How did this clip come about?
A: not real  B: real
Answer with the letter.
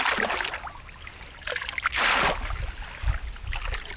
B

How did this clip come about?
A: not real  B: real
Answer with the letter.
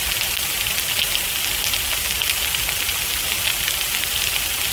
B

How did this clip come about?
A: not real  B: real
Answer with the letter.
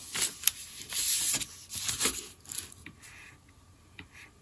B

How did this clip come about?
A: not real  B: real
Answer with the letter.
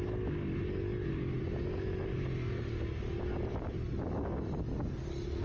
B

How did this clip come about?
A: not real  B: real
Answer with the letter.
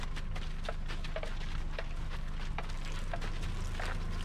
B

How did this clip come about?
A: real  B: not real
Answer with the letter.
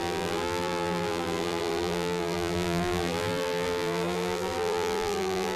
B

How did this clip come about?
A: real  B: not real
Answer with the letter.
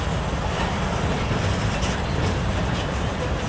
A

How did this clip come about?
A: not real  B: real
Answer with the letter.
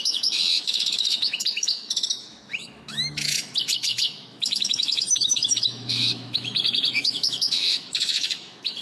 A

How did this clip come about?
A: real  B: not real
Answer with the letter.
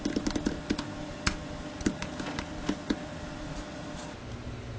A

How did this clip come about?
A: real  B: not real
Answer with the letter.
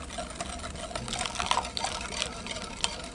A